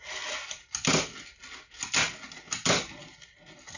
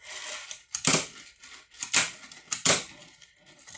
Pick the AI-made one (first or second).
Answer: second